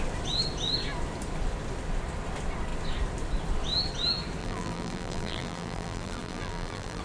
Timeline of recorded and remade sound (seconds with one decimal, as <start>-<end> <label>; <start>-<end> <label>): 0.0-4.4 recorded; 4.4-7.0 remade